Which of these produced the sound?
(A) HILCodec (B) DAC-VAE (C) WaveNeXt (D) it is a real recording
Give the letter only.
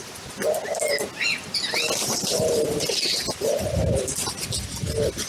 D